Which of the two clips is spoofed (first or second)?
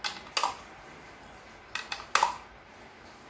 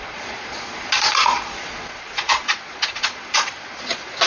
second